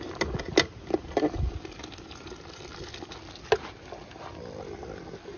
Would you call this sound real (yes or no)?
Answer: yes